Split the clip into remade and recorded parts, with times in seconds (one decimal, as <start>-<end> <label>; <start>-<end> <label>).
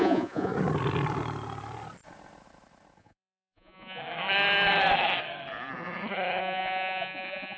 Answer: 0.0-0.5 remade; 0.5-3.0 recorded; 3.0-4.0 remade; 4.0-6.4 recorded; 6.4-7.6 remade